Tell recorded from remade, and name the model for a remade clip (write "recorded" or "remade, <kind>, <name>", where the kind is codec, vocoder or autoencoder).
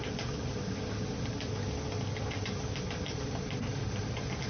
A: recorded